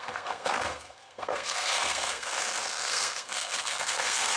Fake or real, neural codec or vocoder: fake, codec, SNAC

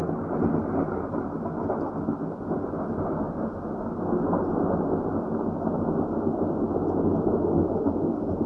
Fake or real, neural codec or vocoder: real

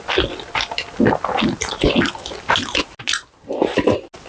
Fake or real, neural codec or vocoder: real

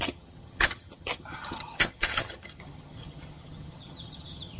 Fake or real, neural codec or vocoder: fake, vocoder, HiFi-GAN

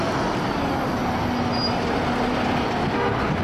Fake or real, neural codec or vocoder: real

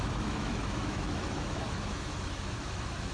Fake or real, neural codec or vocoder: fake, autoencoder, DAC-VAE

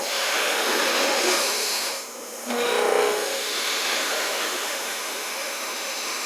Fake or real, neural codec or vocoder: fake, autoencoder, DAC-VAE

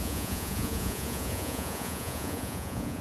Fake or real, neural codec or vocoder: fake, vocoder, Vocos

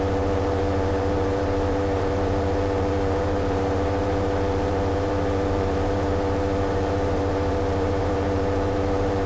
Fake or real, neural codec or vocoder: fake, vocoder, BigVGAN v2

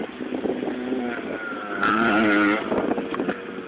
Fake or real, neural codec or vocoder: real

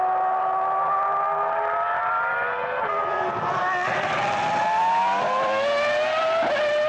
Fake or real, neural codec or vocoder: real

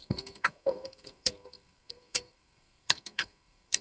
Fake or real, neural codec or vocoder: fake, codec, SNAC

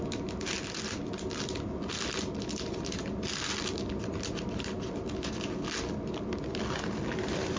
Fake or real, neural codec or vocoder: real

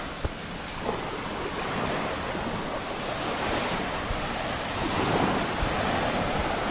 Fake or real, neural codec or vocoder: real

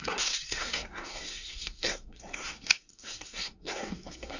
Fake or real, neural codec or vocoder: fake, codec, SNAC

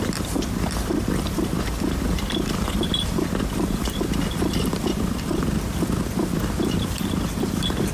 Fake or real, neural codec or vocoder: fake, vocoder, BigVGAN v2